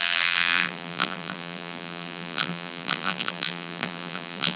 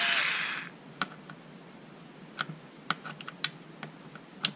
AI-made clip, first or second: first